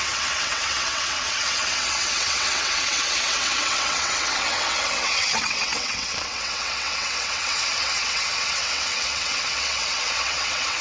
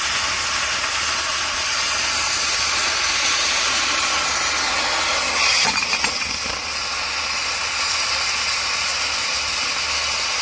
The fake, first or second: first